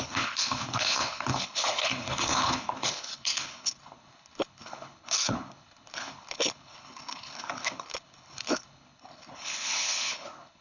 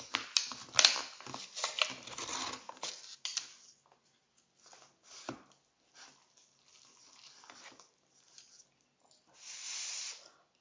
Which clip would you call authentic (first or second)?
second